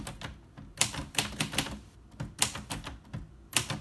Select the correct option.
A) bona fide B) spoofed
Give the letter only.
A